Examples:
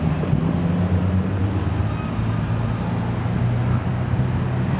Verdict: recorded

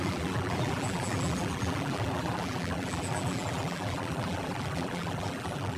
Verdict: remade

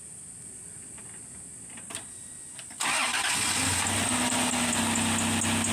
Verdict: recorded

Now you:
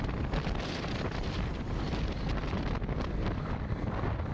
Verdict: recorded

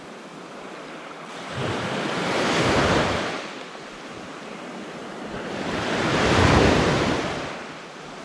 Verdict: remade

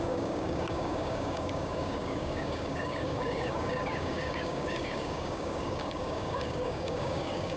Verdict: remade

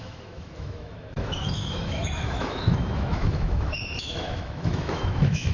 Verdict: remade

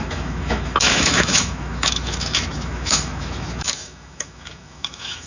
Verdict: remade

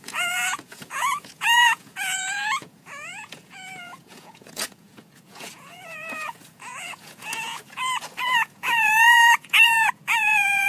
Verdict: remade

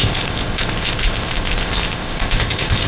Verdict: remade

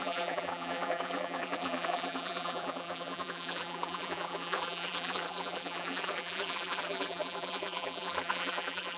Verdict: remade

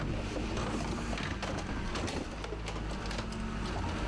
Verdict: recorded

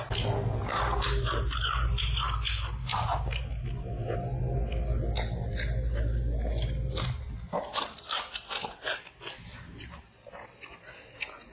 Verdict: recorded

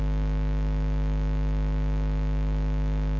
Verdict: remade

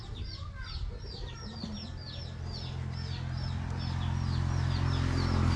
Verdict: recorded